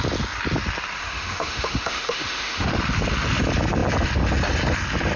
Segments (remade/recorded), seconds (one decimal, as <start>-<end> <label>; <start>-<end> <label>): 0.0-1.0 recorded; 1.0-2.7 remade; 2.7-5.2 recorded